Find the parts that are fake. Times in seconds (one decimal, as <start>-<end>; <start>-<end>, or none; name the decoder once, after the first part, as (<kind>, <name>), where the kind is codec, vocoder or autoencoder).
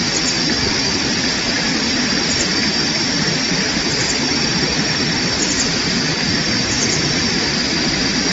none